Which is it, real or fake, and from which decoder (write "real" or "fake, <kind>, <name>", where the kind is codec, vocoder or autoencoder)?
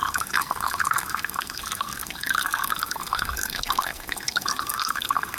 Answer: fake, codec, SNAC